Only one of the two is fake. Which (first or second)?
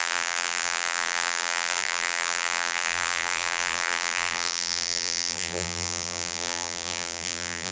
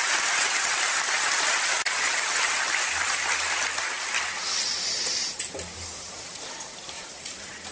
first